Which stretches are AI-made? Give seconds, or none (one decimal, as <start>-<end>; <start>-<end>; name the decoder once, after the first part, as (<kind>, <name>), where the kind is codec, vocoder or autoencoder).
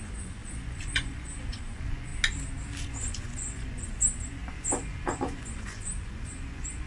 0.0-2.1 (vocoder, Vocos); 2.8-6.9